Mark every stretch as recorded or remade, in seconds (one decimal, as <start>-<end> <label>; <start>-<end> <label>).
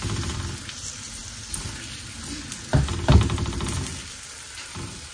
0.0-5.1 recorded